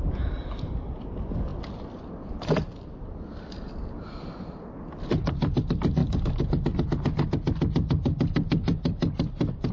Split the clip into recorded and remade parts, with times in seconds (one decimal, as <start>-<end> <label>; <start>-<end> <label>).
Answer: 0.0-9.7 recorded